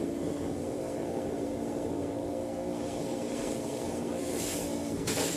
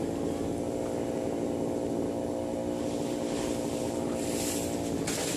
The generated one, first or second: first